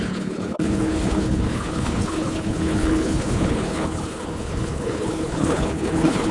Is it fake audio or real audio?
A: fake